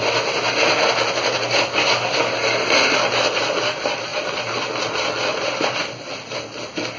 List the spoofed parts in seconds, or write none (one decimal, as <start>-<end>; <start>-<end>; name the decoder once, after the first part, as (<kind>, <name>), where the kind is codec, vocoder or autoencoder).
none